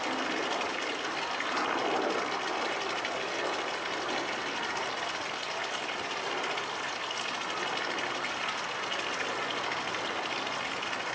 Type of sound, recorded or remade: recorded